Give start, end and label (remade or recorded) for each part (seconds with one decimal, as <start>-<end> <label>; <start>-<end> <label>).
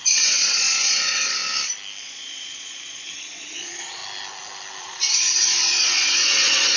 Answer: 0.0-1.4 remade; 1.4-2.0 recorded; 2.0-4.0 remade; 4.0-4.8 recorded; 4.8-6.8 remade